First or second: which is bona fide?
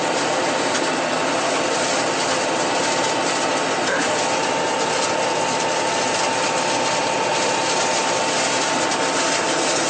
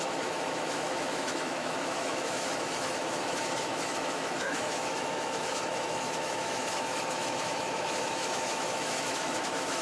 first